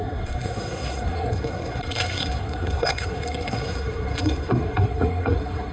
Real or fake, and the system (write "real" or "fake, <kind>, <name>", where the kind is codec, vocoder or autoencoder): fake, codec, SNAC